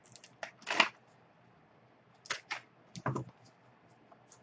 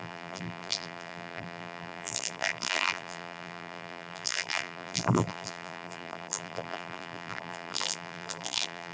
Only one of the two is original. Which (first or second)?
first